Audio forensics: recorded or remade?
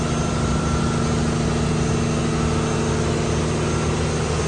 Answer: recorded